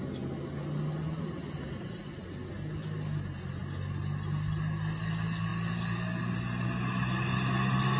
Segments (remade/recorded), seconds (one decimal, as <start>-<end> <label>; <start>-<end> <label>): 0.0-8.0 recorded